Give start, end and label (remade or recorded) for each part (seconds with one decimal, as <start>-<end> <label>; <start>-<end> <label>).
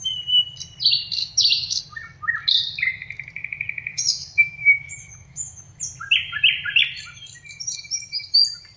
0.0-1.2 recorded; 1.2-1.8 remade; 1.8-3.9 recorded; 3.9-5.6 remade; 5.6-8.8 recorded